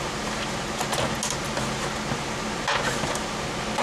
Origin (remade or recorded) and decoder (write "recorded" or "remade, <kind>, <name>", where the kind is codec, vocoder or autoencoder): recorded